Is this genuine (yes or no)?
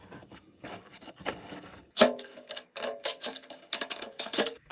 no